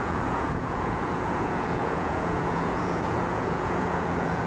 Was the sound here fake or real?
fake